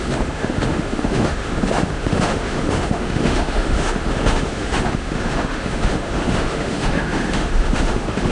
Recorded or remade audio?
remade